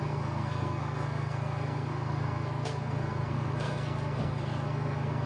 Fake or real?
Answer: fake